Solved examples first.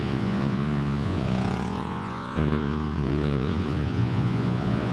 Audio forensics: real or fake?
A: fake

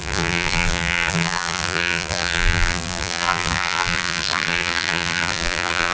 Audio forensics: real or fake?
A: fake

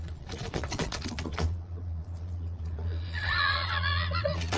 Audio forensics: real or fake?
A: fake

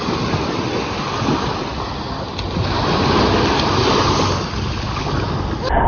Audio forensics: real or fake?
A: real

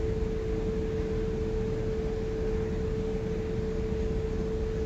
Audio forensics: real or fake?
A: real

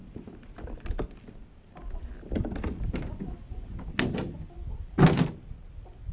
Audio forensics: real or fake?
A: real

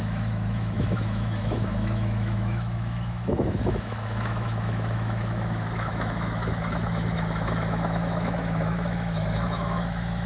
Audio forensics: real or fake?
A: fake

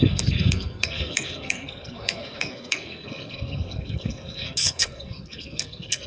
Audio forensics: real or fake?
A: fake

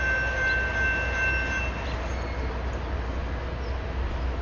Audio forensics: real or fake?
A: real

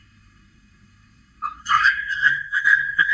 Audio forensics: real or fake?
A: fake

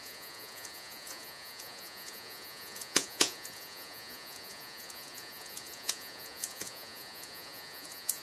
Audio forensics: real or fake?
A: fake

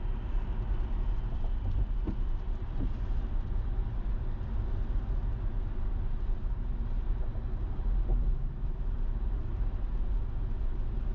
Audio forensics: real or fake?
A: real